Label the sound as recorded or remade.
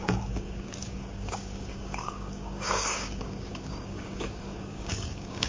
remade